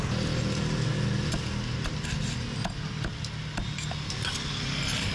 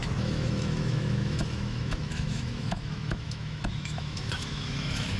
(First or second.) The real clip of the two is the first